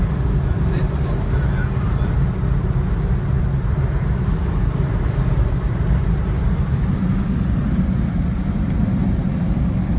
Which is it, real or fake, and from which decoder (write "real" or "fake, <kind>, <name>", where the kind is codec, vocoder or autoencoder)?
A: real